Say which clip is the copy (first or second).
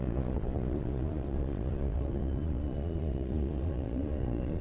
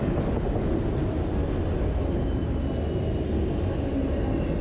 first